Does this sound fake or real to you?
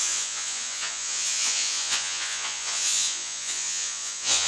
fake